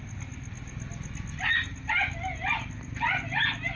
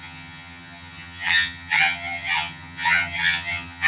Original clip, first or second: first